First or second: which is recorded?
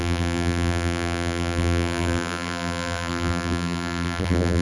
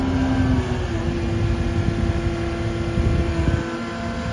second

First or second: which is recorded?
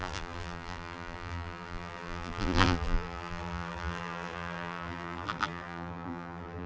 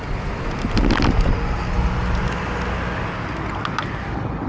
second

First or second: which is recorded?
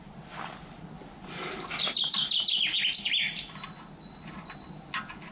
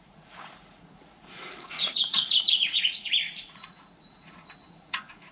first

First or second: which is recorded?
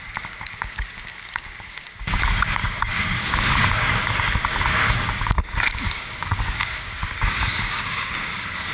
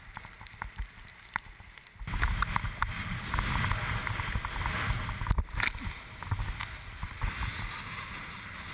second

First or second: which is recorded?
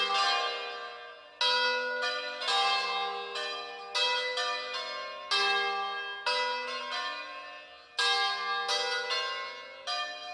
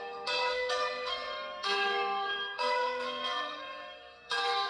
first